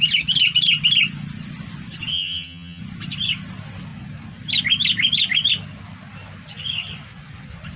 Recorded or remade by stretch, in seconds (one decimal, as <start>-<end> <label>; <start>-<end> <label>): 0.0-2.1 recorded; 2.1-2.8 remade; 2.8-7.8 recorded